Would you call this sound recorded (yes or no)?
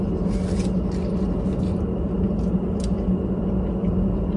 yes